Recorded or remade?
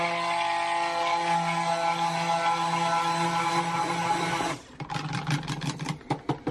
recorded